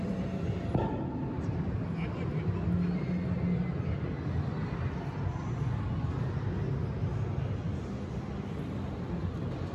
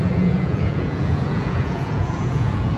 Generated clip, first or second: second